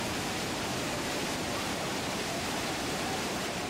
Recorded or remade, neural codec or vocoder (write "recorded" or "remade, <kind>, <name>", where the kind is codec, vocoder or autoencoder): remade, vocoder, BigVGAN v2